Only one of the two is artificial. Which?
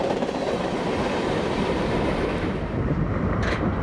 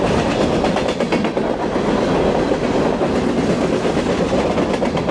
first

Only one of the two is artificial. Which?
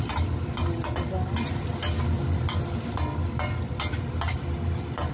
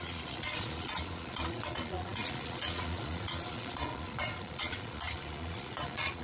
second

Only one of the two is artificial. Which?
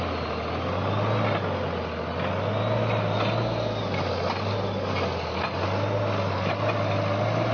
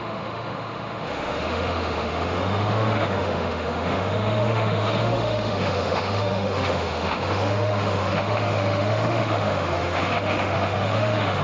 second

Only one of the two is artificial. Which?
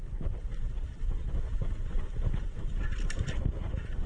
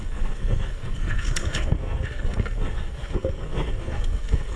second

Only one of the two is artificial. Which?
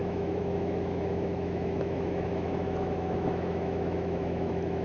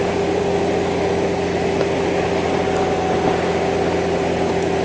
first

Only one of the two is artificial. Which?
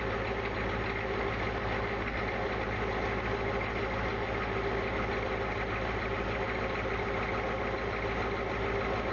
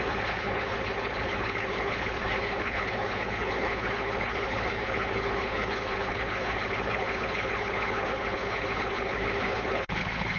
second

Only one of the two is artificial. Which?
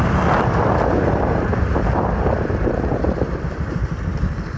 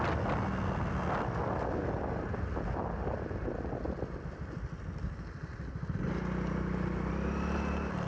first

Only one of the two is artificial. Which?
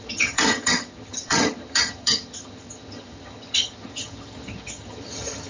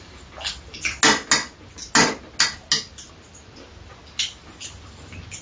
first